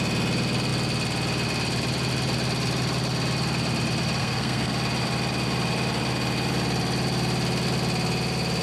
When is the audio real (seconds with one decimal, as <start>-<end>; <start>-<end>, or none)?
0.0-4.2; 4.7-8.6